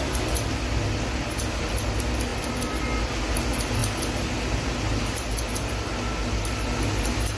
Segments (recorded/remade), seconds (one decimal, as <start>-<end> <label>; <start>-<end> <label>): 0.0-7.4 recorded